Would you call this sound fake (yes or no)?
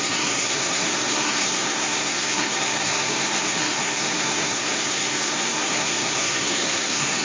yes